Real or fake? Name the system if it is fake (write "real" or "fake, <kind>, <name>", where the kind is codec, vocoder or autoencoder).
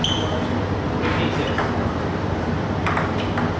real